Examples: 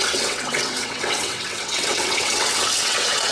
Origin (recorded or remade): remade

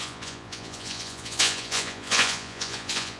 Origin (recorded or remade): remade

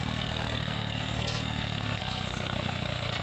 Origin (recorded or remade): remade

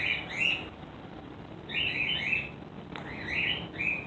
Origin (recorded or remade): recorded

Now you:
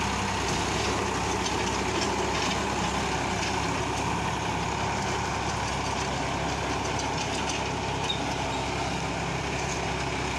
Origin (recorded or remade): recorded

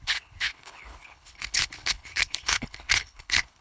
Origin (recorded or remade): remade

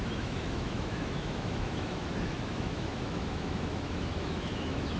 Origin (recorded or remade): remade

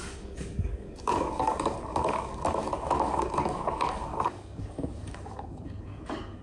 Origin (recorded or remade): remade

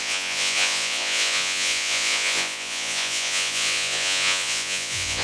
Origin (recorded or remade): remade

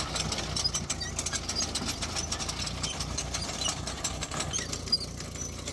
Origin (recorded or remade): recorded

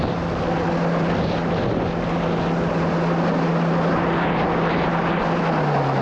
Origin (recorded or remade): recorded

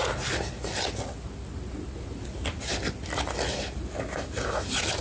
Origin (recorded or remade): recorded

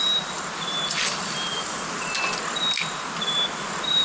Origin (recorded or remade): recorded